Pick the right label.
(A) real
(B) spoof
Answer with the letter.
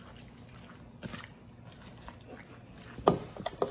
A